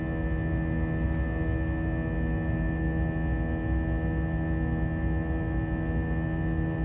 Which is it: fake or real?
real